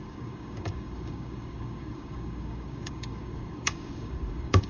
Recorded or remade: remade